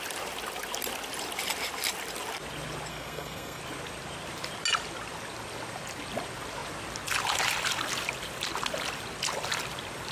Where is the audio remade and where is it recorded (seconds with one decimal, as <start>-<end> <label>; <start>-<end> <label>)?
0.0-2.9 recorded; 2.9-3.6 remade; 3.6-10.1 recorded